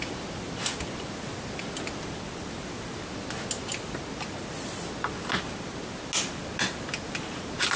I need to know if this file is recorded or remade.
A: recorded